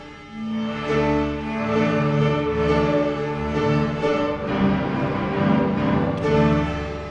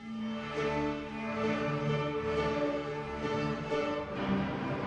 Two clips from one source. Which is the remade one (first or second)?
second